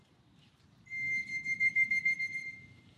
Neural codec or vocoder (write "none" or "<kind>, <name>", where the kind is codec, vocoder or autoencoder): vocoder, BigVGAN v2